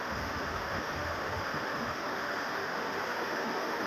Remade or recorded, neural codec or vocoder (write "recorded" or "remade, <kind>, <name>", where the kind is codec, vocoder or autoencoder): remade, autoencoder, DAC-VAE